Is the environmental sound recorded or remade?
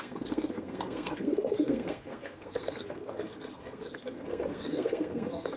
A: remade